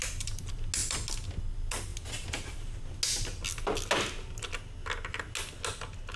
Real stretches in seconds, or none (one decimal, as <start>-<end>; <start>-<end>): 0.0-6.2